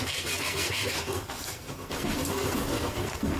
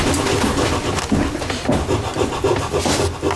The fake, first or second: first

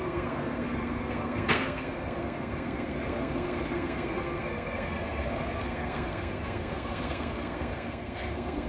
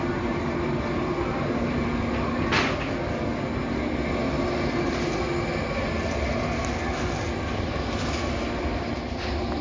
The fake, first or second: first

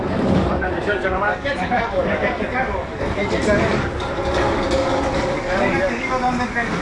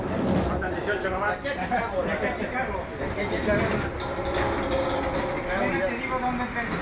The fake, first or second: first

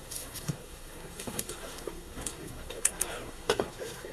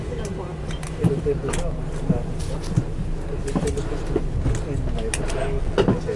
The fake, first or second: first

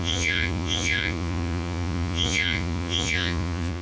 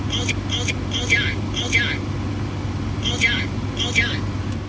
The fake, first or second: first